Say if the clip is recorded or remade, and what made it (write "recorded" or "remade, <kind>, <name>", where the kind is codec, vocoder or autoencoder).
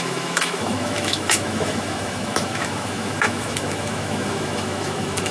remade, autoencoder, DAC-VAE